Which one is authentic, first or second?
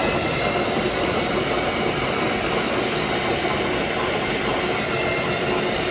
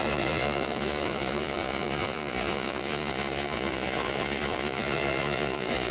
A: first